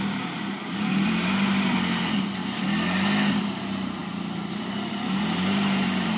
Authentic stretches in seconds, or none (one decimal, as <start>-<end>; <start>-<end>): 2.4-3.4

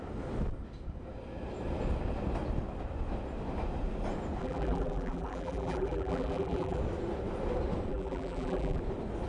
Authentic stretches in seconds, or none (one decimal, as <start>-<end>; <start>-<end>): 0.0-4.4; 6.8-7.9; 8.8-9.3

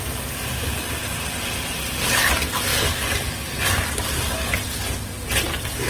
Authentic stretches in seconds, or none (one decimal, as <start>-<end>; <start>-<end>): 0.0-2.7; 3.3-5.9

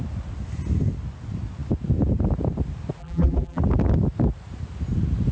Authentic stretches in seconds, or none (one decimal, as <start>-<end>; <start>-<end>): 0.0-3.0; 3.6-5.3

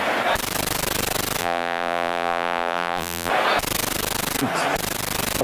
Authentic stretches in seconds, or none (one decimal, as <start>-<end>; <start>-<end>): 0.0-1.4; 3.3-5.4